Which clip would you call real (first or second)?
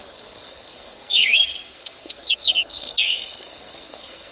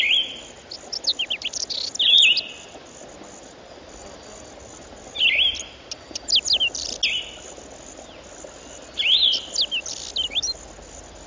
second